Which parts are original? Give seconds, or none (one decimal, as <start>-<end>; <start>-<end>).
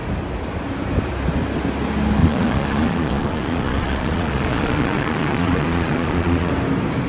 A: 0.0-2.2; 6.5-7.1